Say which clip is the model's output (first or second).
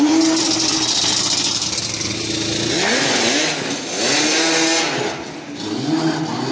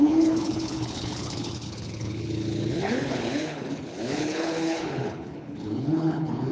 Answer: second